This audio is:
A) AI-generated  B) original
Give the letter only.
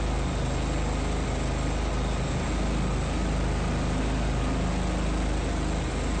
B